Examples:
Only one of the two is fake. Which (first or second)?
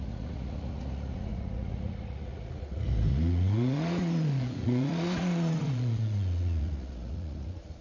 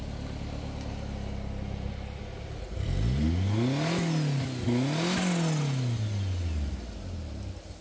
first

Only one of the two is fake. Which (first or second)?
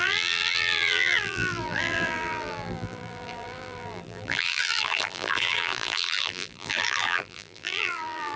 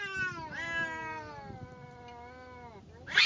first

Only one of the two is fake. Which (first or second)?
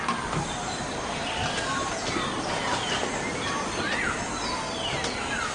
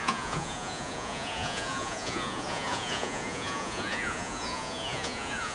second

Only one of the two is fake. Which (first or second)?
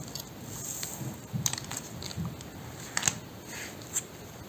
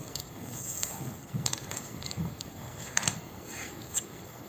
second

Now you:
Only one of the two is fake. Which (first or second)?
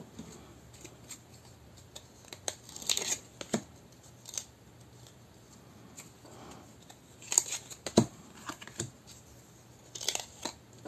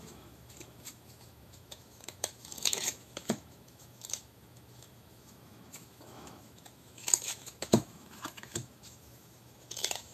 second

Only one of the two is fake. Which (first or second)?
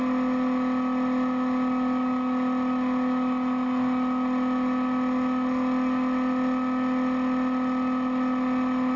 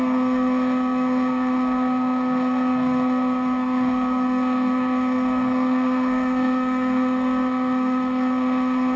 second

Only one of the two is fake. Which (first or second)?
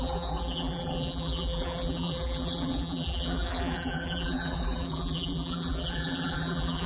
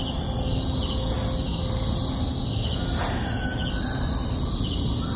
first